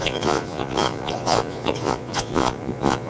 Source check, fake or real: fake